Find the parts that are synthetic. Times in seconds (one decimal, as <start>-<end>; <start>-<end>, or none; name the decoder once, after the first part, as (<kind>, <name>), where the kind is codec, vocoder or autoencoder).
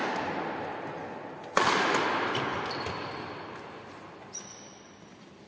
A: none